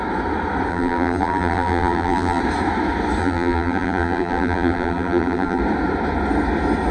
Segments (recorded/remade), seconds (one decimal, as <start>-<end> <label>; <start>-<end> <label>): 0.0-0.7 recorded; 0.7-2.4 remade; 2.4-3.2 recorded; 3.2-5.6 remade; 5.6-6.9 recorded